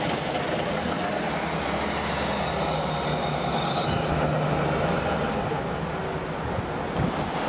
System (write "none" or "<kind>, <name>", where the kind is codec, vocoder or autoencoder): none